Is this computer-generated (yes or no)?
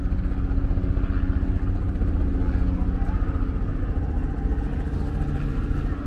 no